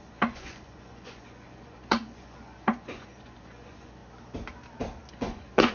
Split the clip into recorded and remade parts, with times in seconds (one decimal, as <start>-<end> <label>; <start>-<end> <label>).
0.0-4.0 remade; 4.0-5.1 recorded; 5.1-5.7 remade